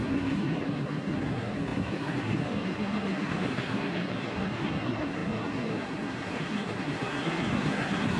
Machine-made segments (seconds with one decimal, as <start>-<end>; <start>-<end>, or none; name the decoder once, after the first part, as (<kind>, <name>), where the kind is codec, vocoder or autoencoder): 0.0-8.2 (codec, SNAC)